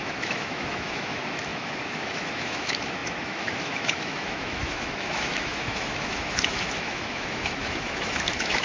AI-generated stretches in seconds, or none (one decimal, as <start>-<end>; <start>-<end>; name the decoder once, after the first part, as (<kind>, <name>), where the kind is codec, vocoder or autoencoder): 0.0-8.6 (autoencoder, DAC-VAE)